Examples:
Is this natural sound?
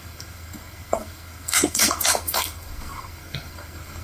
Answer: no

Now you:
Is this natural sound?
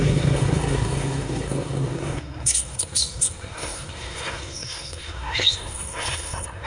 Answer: no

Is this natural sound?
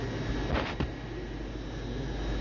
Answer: yes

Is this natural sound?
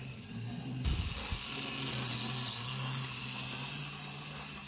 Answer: yes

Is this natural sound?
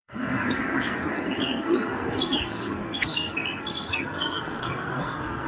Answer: no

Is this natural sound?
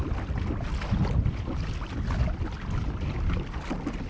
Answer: yes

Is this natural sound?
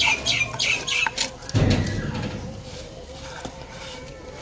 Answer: yes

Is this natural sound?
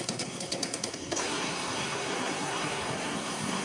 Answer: no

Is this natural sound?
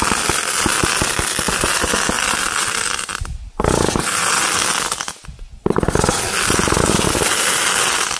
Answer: yes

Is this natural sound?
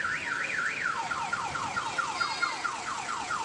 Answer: yes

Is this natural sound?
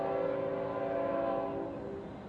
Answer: yes